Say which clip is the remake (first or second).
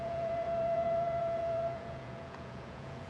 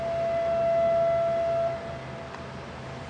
first